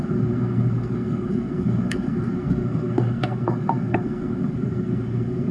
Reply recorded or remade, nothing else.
remade